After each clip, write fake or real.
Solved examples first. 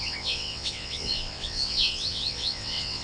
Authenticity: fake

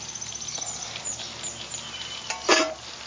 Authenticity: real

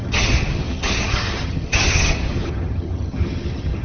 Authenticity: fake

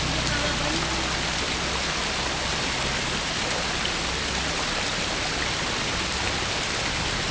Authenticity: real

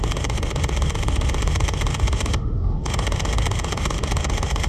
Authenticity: fake